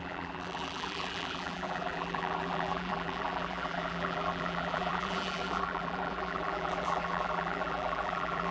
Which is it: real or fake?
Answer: fake